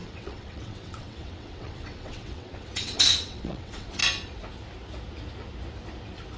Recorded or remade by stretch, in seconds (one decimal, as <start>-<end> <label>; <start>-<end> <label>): 0.0-4.0 remade; 4.0-6.4 recorded